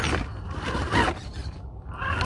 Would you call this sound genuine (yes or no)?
yes